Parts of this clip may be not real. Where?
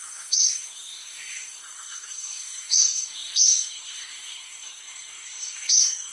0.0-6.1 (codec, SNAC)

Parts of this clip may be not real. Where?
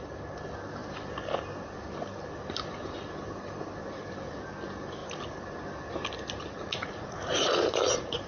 6.6-8.3 (vocoder, Vocos)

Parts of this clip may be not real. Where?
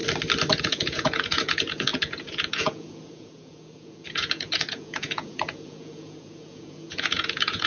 0.6-7.7 (vocoder, Vocos)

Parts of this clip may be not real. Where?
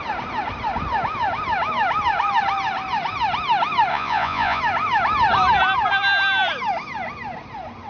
3.9-4.6 (vocoder, Vocos)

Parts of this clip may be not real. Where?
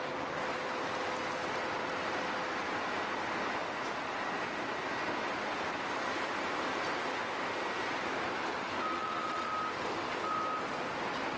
8.9-9.5 (vocoder, Vocos)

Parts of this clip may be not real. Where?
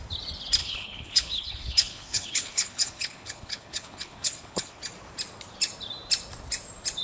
0.6-4.8 (codec, HILCodec)